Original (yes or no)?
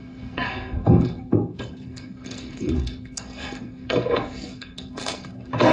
no